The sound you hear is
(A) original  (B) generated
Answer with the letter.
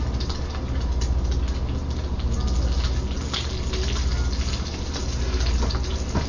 A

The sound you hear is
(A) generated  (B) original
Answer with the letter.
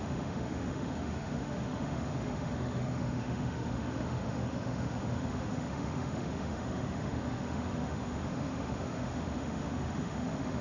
A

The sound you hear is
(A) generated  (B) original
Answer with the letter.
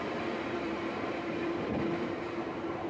A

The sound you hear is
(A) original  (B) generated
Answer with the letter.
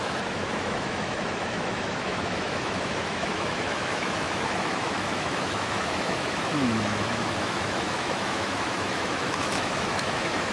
B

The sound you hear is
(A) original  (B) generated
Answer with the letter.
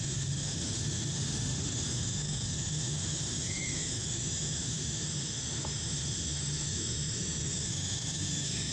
B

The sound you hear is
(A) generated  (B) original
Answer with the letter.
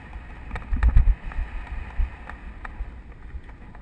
B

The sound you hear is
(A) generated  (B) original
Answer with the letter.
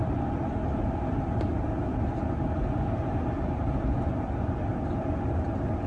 B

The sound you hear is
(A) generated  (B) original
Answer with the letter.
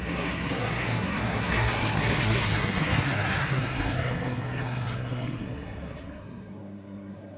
A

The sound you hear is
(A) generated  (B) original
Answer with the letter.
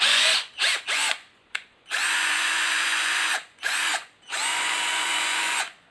A